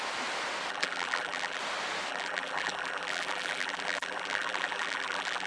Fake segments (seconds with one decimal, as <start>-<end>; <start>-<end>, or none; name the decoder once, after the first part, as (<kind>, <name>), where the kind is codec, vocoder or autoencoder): 0.7-1.6 (vocoder, BigVGAN v2); 2.1-5.5